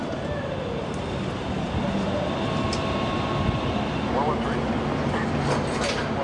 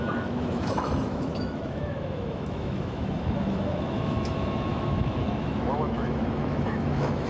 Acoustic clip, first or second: first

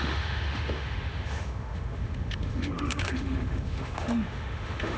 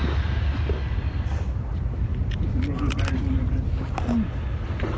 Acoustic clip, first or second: second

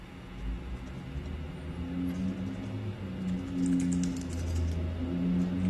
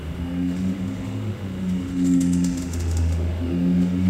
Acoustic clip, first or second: first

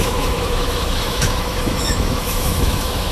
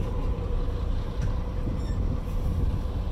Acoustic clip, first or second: second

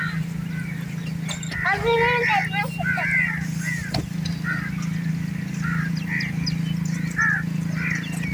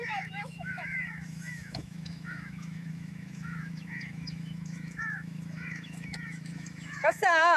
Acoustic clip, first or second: first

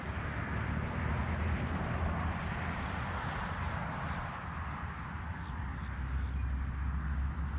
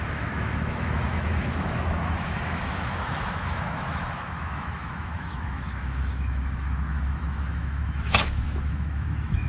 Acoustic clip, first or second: first